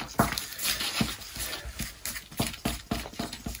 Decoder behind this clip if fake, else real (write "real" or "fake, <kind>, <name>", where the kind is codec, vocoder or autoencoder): real